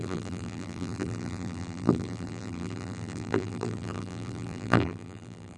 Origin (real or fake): fake